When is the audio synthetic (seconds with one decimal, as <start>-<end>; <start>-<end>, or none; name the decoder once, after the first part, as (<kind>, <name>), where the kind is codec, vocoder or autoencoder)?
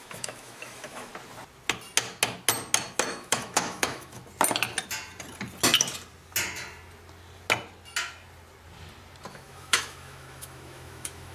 0.0-1.1 (autoencoder, DAC-VAE); 3.1-4.2; 9.3-11.3